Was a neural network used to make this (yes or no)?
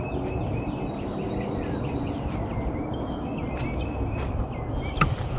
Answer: no